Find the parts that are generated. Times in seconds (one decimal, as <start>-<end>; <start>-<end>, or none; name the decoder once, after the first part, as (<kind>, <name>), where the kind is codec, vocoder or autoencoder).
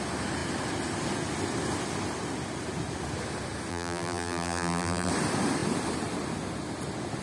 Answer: 3.7-5.1 (vocoder, BigVGAN v2)